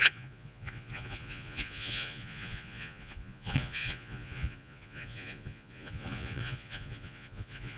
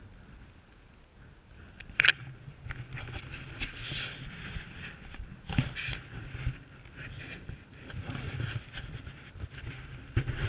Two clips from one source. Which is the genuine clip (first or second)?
second